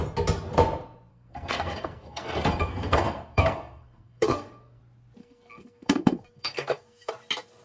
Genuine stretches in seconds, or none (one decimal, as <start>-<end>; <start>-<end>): 0.0-1.1; 4.8-5.2; 7.1-7.6